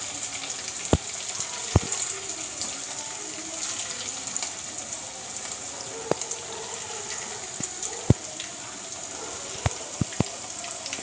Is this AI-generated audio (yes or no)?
no